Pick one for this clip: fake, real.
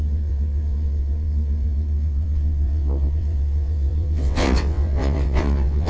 fake